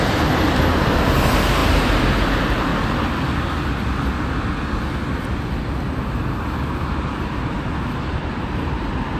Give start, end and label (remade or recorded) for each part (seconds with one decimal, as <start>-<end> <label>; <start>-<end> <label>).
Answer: 0.0-2.7 remade; 2.7-7.0 recorded; 7.0-9.2 remade